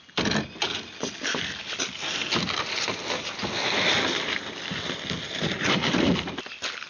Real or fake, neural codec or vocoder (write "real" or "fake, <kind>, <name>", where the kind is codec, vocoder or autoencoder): real